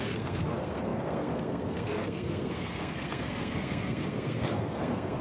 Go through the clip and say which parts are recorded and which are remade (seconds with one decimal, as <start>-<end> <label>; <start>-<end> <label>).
0.0-5.2 remade